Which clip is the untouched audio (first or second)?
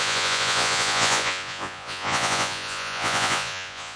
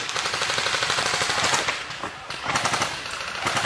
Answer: second